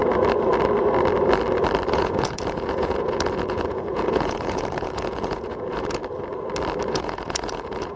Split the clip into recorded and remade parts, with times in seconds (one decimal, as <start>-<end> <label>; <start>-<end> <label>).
0.0-1.9 recorded; 1.9-6.0 remade; 6.0-6.9 recorded; 6.9-8.0 remade